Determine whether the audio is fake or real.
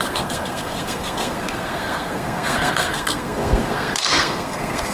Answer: fake